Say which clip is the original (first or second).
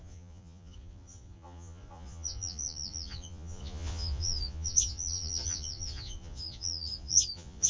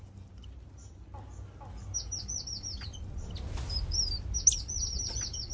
second